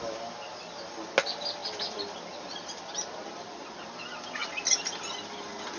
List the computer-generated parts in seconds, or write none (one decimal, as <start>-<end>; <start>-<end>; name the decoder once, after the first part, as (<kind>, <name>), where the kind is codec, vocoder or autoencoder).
none